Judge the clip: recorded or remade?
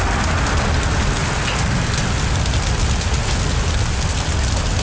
recorded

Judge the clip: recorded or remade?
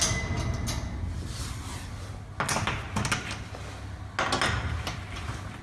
recorded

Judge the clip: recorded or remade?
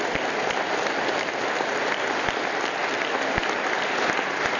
recorded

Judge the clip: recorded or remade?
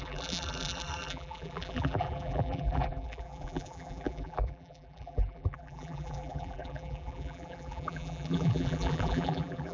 remade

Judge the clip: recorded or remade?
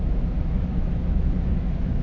remade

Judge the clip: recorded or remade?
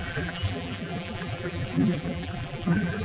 remade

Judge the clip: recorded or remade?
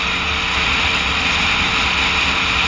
recorded